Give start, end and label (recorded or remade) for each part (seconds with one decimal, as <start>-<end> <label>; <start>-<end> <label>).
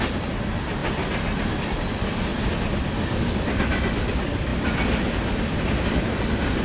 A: 0.0-6.6 recorded